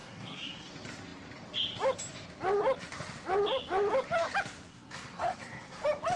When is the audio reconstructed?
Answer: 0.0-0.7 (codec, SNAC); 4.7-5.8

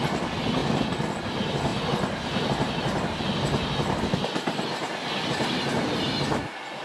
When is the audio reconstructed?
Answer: none

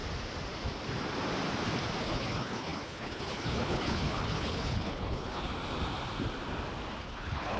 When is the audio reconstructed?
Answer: 2.0-5.5 (codec, HILCodec); 7.0-7.6

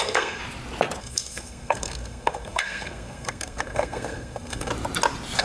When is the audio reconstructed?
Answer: 0.0-0.4 (codec, SNAC); 1.0-4.7

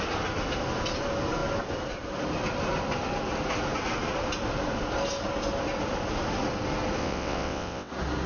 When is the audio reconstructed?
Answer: 7.0-7.9 (vocoder, WaveNeXt)